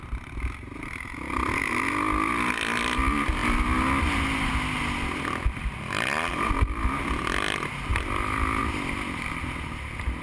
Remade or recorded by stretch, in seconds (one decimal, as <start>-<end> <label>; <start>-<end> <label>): 0.0-10.2 recorded